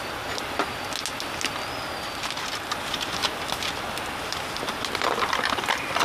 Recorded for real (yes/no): yes